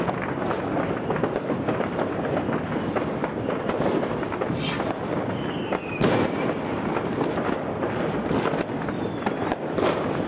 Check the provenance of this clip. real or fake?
real